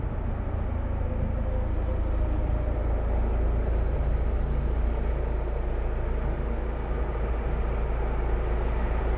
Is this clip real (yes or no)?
yes